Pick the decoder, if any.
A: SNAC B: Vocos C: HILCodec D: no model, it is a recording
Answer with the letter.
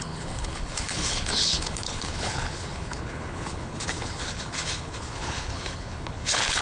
C